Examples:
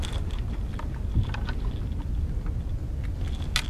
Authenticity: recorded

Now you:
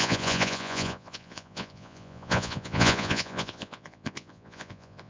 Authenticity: remade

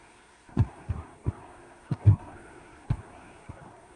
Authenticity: remade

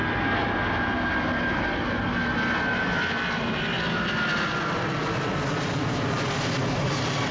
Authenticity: recorded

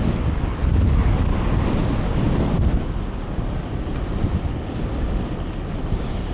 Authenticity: recorded